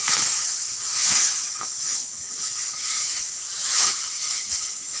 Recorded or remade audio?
remade